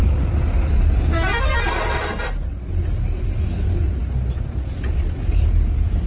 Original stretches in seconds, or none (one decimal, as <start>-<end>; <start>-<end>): 0.0-6.1